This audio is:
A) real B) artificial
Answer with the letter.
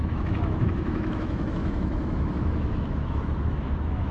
B